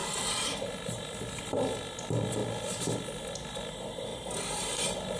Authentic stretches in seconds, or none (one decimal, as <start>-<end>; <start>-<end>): 1.0-4.1